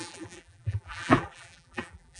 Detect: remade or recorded remade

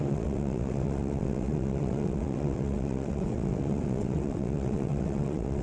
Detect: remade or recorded remade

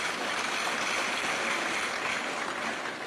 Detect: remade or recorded recorded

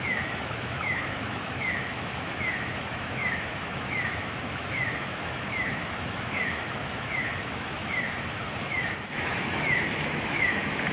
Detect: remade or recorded remade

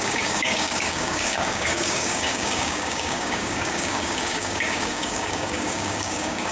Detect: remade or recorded remade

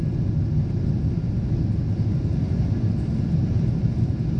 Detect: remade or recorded recorded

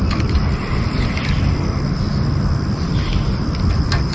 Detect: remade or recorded recorded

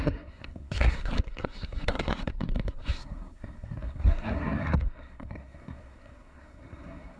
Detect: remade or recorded remade